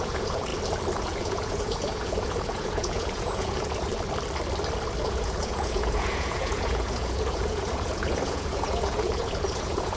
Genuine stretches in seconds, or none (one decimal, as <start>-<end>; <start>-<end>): 0.5-1.0; 3.9-5.0